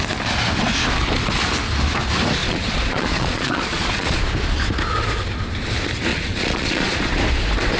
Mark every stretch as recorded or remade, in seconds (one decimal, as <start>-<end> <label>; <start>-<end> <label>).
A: 0.0-2.4 recorded; 2.4-4.2 remade; 4.2-6.1 recorded; 6.1-7.0 remade; 7.0-7.8 recorded

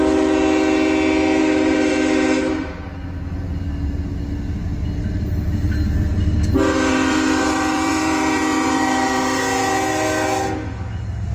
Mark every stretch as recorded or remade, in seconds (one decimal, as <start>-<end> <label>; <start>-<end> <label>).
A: 0.0-1.4 recorded; 1.4-2.7 remade; 2.7-5.0 recorded; 5.0-9.4 remade; 9.4-11.3 recorded

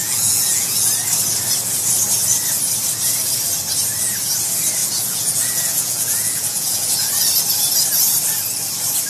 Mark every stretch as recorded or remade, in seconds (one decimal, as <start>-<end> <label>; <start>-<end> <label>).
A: 0.0-0.9 remade; 0.9-4.8 recorded; 4.8-7.1 remade; 7.1-9.1 recorded

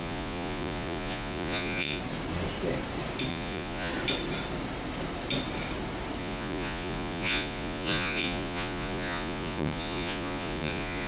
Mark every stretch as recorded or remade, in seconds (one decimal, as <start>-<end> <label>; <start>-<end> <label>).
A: 0.0-2.0 remade; 2.0-3.3 recorded; 3.3-3.9 remade; 3.9-6.2 recorded; 6.2-11.1 remade

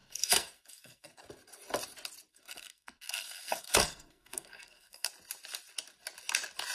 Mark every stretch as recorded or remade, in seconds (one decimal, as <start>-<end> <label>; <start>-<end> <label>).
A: 0.0-1.2 remade; 1.2-2.3 recorded; 2.3-5.1 remade; 5.1-6.7 recorded